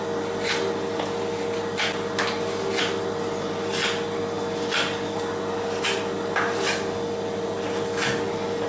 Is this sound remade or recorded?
recorded